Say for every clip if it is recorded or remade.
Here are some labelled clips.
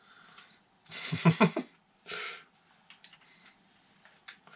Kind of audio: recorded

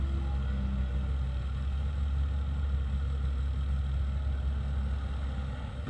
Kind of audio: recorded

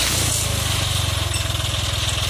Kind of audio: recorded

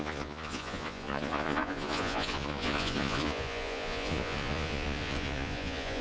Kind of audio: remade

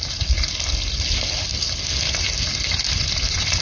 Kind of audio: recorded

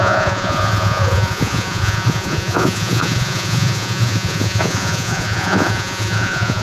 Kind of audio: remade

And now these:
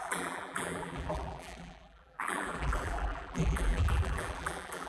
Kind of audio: remade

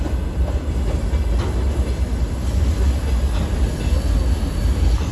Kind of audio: recorded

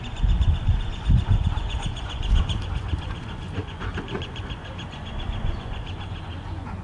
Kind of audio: remade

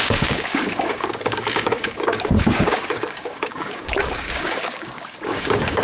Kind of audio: remade